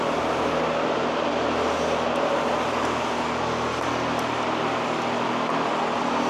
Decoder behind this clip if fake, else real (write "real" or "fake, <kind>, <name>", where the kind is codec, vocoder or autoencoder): real